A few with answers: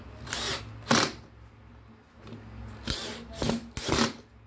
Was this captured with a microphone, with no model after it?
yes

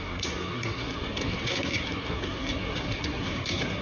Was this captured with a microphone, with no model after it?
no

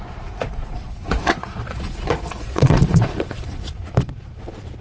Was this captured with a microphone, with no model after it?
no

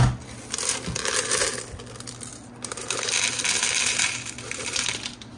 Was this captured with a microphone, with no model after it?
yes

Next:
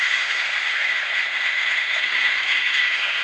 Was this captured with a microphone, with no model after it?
no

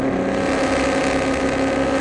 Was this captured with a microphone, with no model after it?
yes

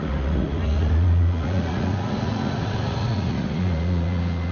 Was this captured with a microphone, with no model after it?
no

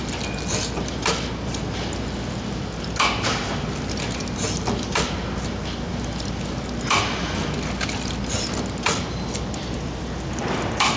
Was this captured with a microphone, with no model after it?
yes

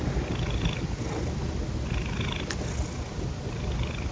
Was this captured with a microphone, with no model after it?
yes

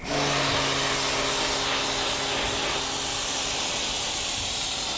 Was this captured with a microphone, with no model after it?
yes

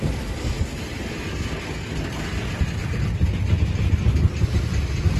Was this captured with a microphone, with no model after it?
yes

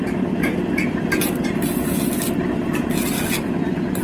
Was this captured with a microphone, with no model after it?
yes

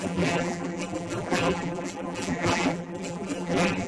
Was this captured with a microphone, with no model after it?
no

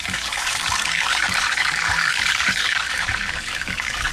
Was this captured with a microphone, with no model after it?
no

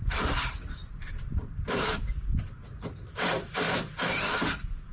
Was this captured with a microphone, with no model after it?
no